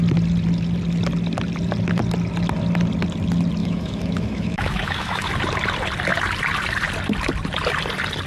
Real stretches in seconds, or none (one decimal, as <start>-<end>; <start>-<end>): 0.0-3.6; 5.3-8.3